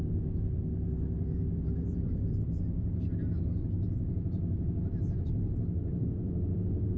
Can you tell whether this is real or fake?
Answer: fake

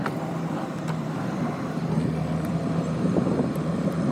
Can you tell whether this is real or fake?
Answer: fake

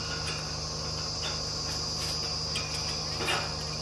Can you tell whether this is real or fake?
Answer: real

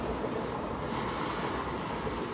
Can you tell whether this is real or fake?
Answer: real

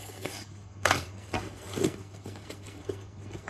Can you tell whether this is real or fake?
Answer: fake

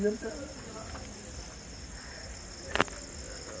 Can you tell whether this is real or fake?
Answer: real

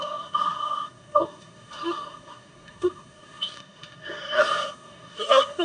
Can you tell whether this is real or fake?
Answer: fake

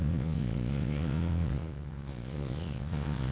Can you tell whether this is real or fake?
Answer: fake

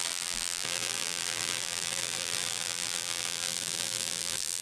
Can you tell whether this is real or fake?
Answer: fake